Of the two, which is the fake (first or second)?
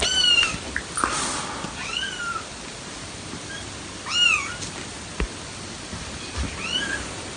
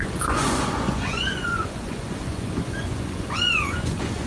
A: second